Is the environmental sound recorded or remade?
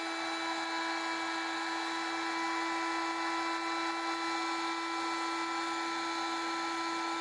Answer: recorded